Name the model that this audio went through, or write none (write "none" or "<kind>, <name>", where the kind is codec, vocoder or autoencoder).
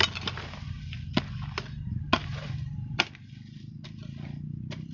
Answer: none